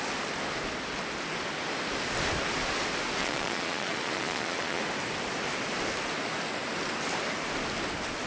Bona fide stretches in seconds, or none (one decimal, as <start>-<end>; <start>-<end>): 0.0-3.2; 4.8-8.3